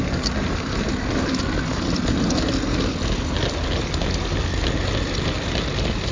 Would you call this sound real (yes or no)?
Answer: yes